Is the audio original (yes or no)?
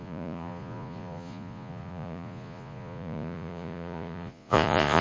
no